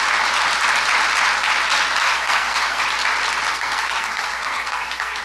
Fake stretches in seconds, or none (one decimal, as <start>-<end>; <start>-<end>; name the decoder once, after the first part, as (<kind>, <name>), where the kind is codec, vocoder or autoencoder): 2.0-2.8 (codec, SNAC); 3.5-5.2